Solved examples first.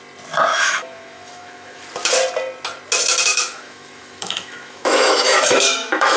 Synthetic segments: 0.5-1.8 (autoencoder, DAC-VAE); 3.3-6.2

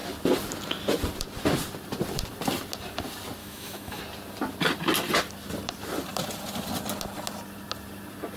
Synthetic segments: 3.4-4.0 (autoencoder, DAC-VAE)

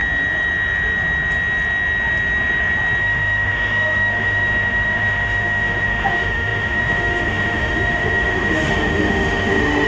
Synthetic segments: 3.0-9.9 (autoencoder, DAC-VAE)

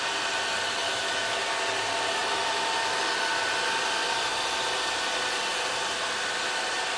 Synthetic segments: 0.8-1.4 (autoencoder, DAC-VAE)